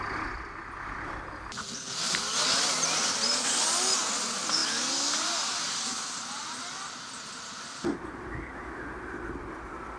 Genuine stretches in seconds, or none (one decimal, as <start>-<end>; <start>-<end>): 0.0-10.0